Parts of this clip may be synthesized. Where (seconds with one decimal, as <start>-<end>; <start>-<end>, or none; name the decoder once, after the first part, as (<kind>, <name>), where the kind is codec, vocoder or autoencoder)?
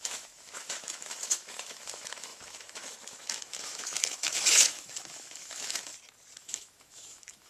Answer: 0.0-5.9 (autoencoder, DAC-VAE); 6.4-7.5